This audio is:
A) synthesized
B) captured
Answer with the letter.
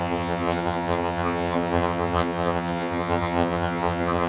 A